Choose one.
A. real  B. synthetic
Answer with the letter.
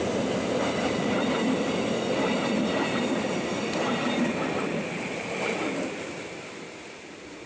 A